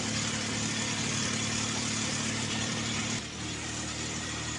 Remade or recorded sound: remade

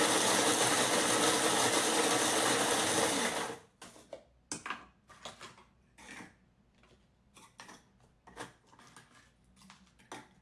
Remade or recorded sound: recorded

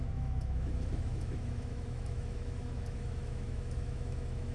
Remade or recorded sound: remade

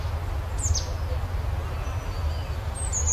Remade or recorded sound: recorded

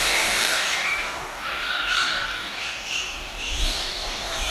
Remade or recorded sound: remade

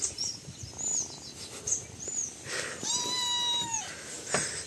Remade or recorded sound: recorded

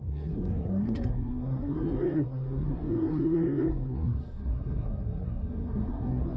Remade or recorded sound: remade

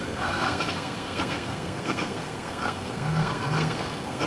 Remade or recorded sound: remade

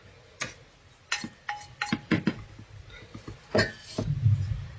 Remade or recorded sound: recorded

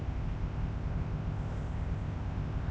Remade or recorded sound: remade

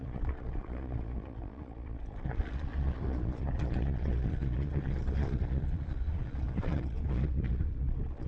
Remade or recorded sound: remade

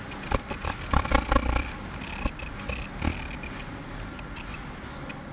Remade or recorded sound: recorded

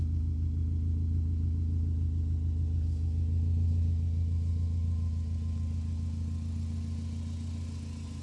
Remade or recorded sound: recorded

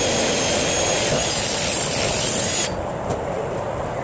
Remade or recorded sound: recorded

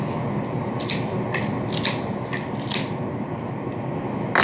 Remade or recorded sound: recorded